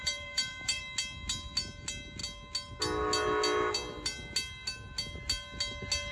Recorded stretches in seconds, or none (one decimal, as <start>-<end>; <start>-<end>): 0.8-6.1